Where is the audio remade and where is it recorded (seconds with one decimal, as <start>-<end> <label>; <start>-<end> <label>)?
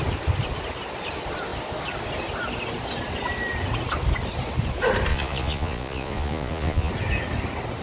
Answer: 0.0-5.1 recorded; 5.1-6.9 remade; 6.9-7.8 recorded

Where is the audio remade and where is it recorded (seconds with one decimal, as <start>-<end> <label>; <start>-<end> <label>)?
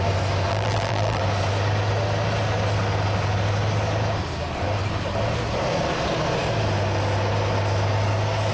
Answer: 0.0-0.5 recorded; 0.5-1.2 remade; 1.2-8.5 recorded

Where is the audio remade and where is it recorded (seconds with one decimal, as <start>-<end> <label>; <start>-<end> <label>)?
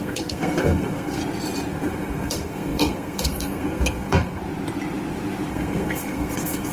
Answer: 0.0-1.2 remade; 1.2-1.7 recorded; 1.7-4.4 remade; 4.4-5.5 recorded; 5.5-6.7 remade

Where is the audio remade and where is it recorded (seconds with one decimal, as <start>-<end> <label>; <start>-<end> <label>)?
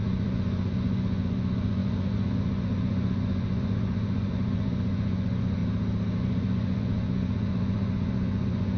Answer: 0.0-5.6 remade; 5.6-6.2 recorded; 6.2-8.8 remade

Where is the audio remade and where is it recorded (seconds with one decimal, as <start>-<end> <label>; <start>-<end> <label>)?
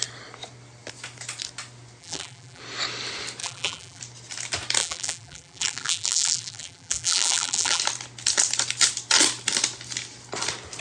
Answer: 0.0-2.0 recorded; 2.0-2.6 remade; 2.6-3.4 recorded; 3.4-4.0 remade; 4.0-4.8 recorded; 4.8-7.8 remade; 7.8-10.8 recorded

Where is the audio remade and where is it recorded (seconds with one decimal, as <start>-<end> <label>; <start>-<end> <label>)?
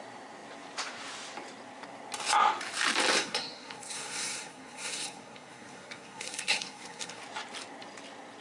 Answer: 0.0-3.1 recorded; 3.1-7.2 remade; 7.2-8.4 recorded